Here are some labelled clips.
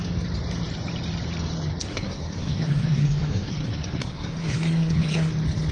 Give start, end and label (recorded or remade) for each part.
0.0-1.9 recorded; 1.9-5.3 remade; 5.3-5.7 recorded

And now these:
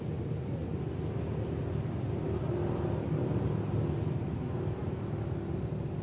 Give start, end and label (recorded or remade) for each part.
0.0-6.0 recorded